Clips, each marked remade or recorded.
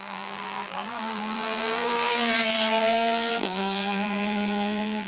remade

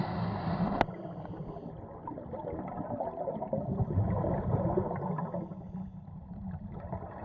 recorded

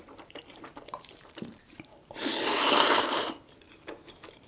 remade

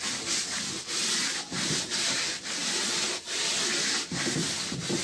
remade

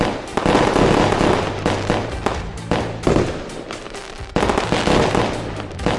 recorded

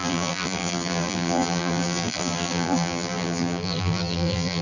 remade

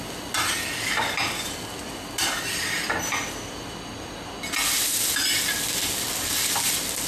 recorded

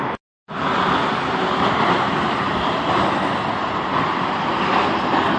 recorded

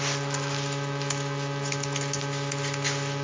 recorded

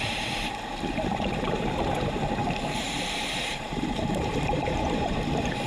remade